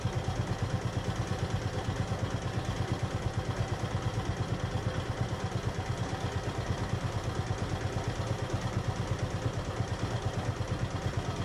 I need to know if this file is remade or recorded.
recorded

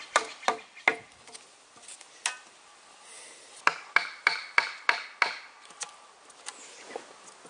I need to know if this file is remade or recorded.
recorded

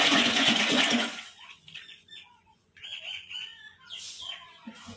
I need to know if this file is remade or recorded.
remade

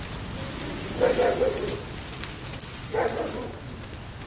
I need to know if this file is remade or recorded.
recorded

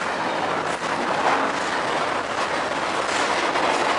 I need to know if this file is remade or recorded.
recorded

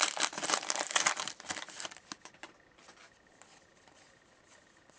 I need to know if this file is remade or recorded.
recorded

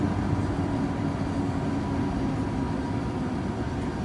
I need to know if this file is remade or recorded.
recorded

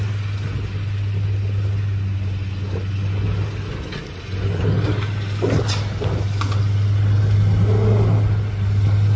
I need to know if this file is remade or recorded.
recorded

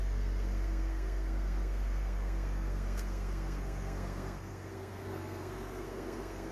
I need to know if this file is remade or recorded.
remade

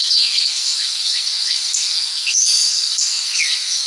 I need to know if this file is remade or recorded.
remade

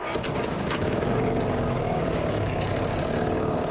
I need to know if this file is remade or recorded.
remade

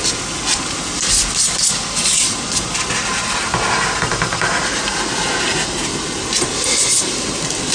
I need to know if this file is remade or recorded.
recorded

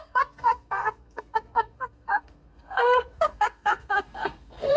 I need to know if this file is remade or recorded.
remade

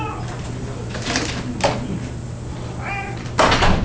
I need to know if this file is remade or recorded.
recorded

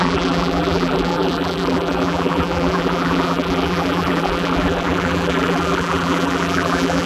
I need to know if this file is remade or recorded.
remade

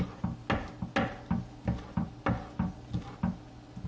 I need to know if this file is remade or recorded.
recorded